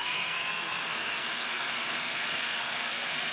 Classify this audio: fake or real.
fake